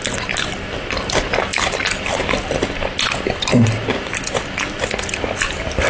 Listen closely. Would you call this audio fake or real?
real